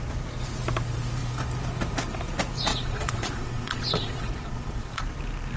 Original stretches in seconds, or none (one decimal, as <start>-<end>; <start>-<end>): 0.0-2.7; 5.0-5.6